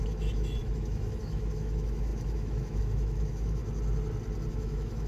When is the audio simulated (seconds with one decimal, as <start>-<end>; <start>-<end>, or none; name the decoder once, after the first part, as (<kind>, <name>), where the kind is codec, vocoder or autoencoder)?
0.0-3.6 (autoencoder, DAC-VAE); 4.5-5.1